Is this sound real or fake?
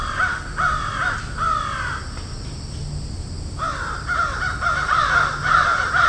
real